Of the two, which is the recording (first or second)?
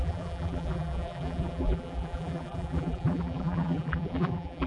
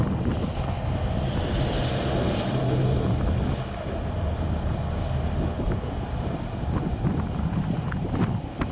second